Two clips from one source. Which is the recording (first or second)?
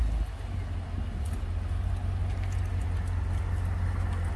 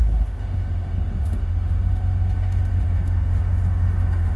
first